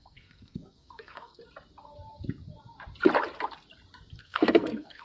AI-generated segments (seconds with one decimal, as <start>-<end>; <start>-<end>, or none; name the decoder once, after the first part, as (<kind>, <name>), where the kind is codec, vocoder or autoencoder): 0.0-1.4 (codec, SNAC); 4.2-5.0